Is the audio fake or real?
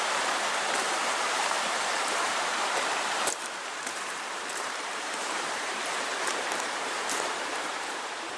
fake